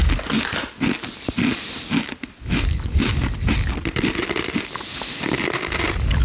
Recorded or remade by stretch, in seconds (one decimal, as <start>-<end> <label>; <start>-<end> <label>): 0.0-6.2 recorded